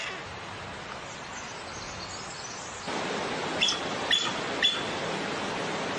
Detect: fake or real real